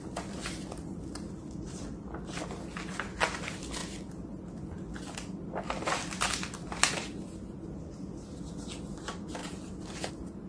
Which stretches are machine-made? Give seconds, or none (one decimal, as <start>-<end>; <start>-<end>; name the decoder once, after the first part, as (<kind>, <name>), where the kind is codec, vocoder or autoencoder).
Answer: none